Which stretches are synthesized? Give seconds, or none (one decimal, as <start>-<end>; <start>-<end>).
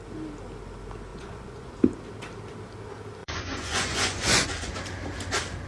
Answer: 1.1-1.7; 3.2-4.7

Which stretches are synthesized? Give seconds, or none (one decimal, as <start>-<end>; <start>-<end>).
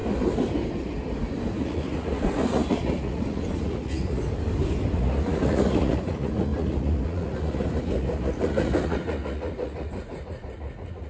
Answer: 1.6-4.2; 4.9-11.1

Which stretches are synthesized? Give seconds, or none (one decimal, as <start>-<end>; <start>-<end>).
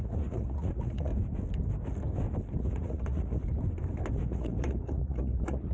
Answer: 0.0-1.1; 2.6-3.4; 4.1-5.7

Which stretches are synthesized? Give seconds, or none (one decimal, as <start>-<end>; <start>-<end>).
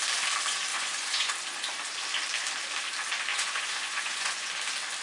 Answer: 0.7-1.3; 3.3-4.5